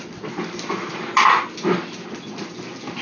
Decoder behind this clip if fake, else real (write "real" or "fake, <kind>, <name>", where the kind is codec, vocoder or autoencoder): real